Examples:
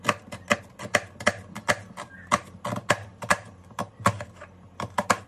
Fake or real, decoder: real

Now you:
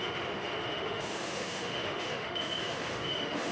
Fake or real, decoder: fake, autoencoder, DAC-VAE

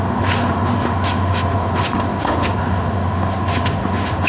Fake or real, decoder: fake, autoencoder, DAC-VAE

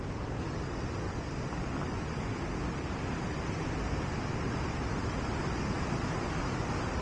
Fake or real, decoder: real